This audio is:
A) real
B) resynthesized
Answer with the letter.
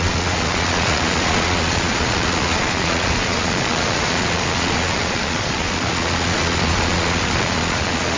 B